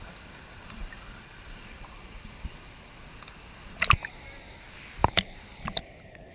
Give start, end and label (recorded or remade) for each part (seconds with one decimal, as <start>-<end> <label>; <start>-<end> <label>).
0.0-0.8 recorded; 0.8-2.5 remade; 2.5-5.0 recorded; 5.0-6.3 remade